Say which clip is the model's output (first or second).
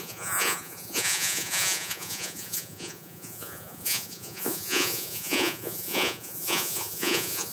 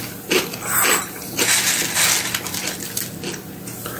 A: first